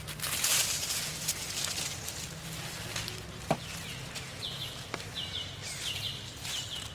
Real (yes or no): yes